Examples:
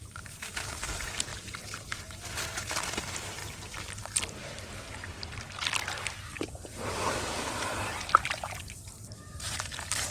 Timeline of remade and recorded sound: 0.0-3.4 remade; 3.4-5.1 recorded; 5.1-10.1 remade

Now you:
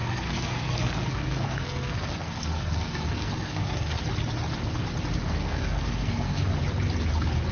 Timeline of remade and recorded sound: 0.0-4.0 remade; 4.0-5.2 recorded; 5.2-6.4 remade; 6.4-7.5 recorded

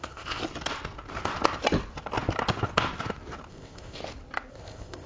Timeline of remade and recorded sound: 0.0-0.4 remade; 0.4-3.5 recorded; 3.5-4.0 remade; 4.0-4.5 recorded; 4.5-5.1 remade